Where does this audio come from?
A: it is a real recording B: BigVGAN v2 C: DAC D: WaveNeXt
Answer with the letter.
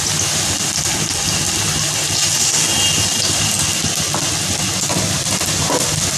A